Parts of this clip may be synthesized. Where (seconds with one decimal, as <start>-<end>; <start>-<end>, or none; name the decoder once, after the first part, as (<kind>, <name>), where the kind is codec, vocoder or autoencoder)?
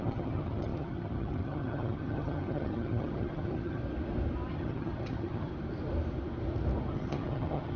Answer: 0.0-3.8 (vocoder, HiFi-GAN); 4.5-5.5; 6.9-7.8